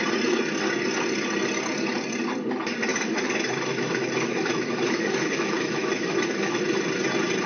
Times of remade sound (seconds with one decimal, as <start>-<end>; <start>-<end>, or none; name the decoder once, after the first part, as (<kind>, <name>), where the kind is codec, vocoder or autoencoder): 2.9-6.6 (autoencoder, DAC-VAE)

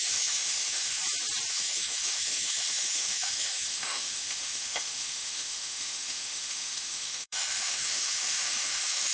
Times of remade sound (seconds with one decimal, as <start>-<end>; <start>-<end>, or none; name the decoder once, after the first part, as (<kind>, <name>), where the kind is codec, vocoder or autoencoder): 0.0-1.0 (autoencoder, DAC-VAE); 1.5-9.1

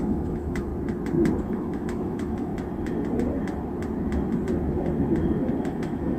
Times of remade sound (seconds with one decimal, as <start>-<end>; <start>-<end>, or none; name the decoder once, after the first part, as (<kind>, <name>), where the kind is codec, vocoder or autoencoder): 0.0-0.7 (autoencoder, DAC-VAE); 1.5-2.5; 5.6-6.2

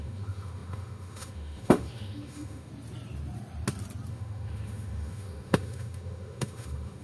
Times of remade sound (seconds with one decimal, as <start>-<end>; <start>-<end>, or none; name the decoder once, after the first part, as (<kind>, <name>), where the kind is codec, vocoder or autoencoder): 0.0-2.7 (autoencoder, DAC-VAE); 4.1-7.0

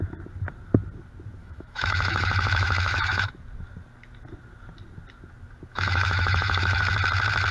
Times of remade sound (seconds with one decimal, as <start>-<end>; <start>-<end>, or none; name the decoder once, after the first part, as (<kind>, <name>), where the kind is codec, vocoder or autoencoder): 1.4-3.3 (autoencoder, DAC-VAE); 5.7-6.8

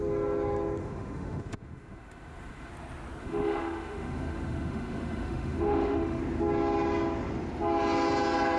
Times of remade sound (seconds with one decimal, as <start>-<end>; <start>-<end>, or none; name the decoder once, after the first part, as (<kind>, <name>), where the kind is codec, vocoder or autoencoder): 0.8-2.7 (autoencoder, DAC-VAE); 3.2-6.2